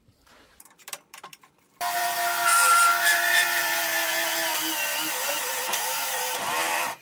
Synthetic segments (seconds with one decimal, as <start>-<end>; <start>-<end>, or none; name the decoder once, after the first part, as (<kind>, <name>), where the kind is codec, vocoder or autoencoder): 0.0-2.5 (vocoder, BigVGAN v2); 3.0-4.5; 5.3-7.0